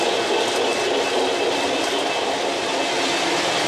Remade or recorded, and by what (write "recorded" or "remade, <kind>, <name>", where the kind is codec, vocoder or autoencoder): recorded